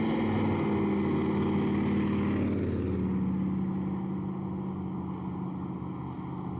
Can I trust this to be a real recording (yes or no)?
yes